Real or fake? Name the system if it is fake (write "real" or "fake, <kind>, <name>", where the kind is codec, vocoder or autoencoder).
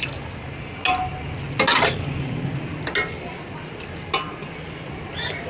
real